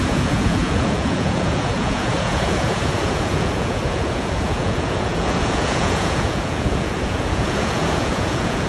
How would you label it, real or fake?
fake